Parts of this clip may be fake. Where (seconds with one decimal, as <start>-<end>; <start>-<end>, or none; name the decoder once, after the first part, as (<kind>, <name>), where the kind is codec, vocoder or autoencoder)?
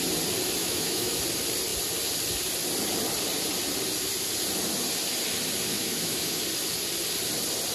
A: 0.6-1.2 (autoencoder, DAC-VAE); 5.7-6.4